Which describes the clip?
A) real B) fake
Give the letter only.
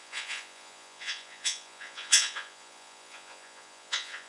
B